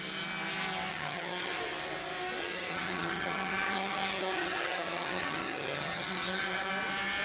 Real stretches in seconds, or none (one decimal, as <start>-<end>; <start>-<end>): 0.0-0.9; 1.6-2.4; 6.7-7.2